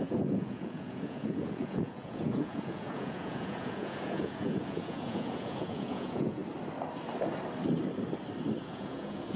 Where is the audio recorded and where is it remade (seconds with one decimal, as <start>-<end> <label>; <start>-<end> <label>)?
0.0-6.4 remade; 6.4-8.6 recorded; 8.6-9.4 remade